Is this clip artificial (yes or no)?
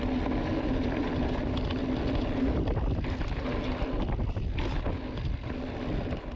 no